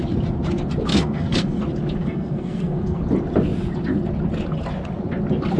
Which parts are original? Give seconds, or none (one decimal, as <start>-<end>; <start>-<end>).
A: 0.0-0.9; 1.6-2.0; 3.0-5.6